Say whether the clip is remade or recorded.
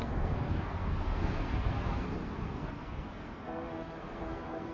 remade